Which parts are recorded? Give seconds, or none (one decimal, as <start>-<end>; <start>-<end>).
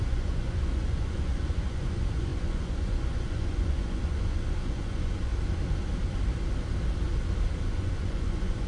5.3-7.6